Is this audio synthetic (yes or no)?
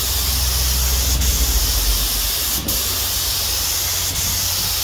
no